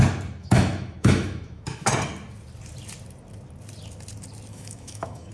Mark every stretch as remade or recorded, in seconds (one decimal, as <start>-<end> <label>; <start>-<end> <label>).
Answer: 0.0-0.4 recorded; 0.4-1.9 remade; 1.9-4.5 recorded; 4.5-5.3 remade